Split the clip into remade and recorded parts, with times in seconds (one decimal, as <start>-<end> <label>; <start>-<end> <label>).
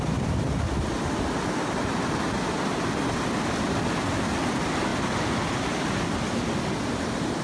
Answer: 0.0-7.4 recorded